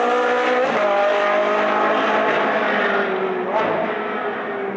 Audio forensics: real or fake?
real